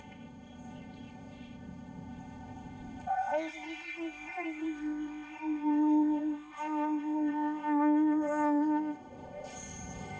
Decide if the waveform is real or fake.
fake